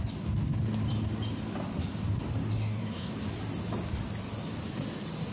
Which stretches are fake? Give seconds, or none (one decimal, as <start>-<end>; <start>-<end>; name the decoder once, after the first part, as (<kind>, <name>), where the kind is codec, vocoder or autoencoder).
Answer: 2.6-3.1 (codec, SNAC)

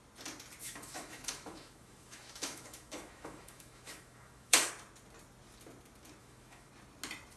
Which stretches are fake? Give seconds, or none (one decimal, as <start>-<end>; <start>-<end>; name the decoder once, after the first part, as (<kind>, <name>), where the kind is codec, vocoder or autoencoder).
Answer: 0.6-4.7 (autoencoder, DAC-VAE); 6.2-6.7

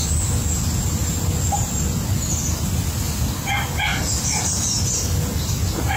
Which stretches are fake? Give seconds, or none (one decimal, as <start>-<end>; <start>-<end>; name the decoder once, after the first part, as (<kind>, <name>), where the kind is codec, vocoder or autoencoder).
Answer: 3.9-4.5 (vocoder, BigVGAN v2)

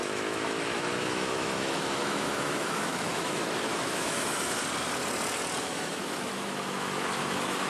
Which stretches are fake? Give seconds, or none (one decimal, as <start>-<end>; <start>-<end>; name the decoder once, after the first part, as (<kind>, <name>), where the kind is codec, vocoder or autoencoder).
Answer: 0.0-4.6 (autoencoder, DAC-VAE); 5.6-7.7

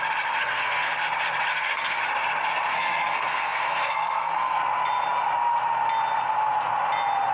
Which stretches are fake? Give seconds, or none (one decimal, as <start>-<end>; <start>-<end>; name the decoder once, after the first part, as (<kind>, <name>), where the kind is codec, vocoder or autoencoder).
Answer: 0.4-0.9 (codec, SNAC); 1.5-2.0; 2.7-4.6

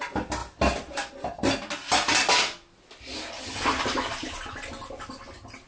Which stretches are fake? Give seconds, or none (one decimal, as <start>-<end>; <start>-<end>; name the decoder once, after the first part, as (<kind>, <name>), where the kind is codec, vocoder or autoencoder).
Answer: none

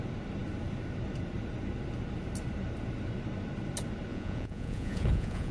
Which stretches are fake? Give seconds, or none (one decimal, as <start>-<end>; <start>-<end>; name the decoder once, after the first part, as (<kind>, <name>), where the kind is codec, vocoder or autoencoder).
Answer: 4.1-5.5 (vocoder, Vocos)

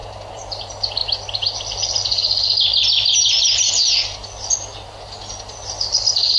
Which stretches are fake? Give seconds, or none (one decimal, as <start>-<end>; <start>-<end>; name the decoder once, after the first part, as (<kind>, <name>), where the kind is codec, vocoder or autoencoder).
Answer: 0.0-0.6 (vocoder, BigVGAN v2)